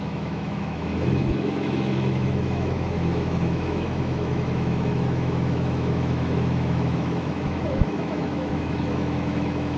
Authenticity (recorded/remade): remade